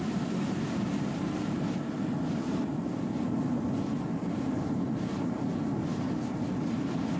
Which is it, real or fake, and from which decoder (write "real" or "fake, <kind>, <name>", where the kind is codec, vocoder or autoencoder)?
real